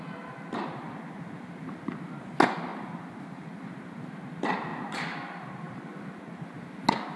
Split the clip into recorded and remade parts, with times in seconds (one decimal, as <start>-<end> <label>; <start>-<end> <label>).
0.0-7.2 recorded